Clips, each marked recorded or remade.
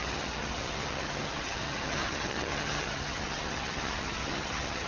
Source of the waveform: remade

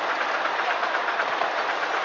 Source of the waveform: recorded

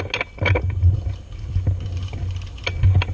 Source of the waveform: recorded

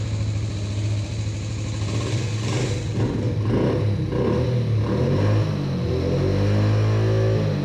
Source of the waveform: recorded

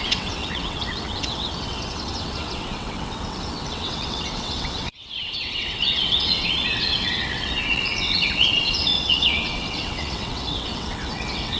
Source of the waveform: remade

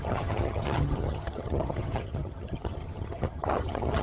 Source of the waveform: remade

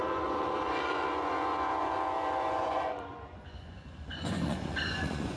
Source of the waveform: remade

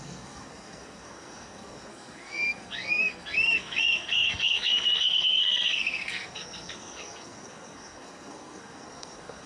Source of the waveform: remade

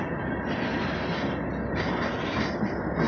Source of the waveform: recorded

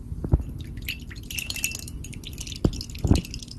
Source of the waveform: recorded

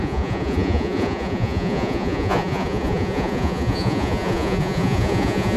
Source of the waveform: remade